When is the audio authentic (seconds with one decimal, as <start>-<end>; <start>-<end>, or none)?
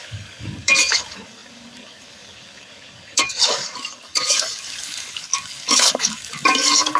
none